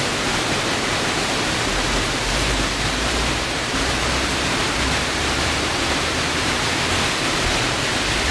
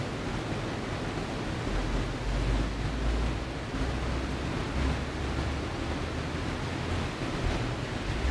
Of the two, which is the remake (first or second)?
first